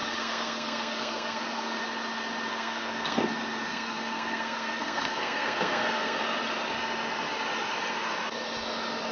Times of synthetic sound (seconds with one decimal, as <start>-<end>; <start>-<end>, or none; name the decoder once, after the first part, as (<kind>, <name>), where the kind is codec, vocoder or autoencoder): 0.0-1.8 (codec, SNAC); 2.5-3.2; 3.7-6.2